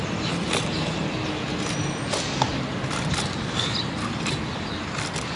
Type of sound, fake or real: real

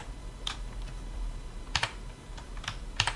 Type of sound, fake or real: fake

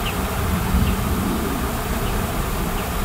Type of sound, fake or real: fake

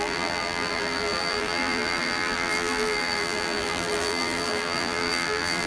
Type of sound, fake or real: fake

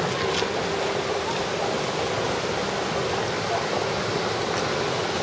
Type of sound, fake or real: real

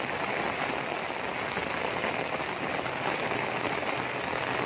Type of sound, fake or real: real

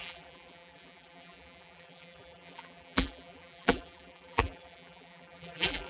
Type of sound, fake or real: fake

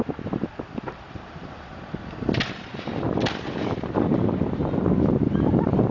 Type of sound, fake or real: fake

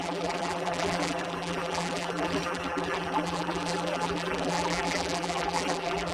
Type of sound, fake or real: fake